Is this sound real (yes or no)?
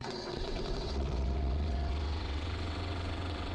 no